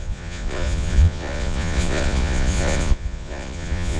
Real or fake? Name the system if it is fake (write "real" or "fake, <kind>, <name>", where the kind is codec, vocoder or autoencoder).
fake, vocoder, Vocos